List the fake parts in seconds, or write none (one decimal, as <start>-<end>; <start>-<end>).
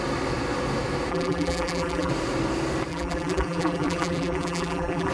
1.1-2.1; 2.9-5.1